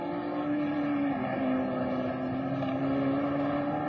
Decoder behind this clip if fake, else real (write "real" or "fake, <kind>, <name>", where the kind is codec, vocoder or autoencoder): real